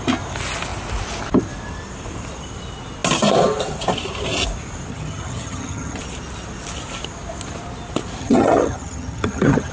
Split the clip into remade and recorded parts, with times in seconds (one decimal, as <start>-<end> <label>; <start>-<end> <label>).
0.0-4.9 recorded; 4.9-6.0 remade; 6.0-8.2 recorded; 8.2-9.7 remade